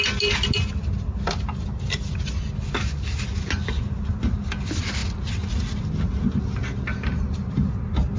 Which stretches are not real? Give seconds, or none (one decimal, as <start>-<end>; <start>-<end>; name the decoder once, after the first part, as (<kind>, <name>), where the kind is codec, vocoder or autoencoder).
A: 6.9-7.7 (vocoder, BigVGAN v2)